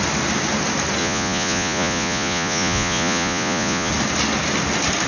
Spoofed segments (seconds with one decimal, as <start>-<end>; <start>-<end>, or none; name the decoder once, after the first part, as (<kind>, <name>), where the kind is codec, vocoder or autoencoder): 1.0-3.9 (vocoder, Vocos)